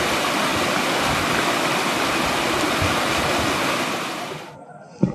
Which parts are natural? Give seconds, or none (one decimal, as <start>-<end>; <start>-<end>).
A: 0.5-3.6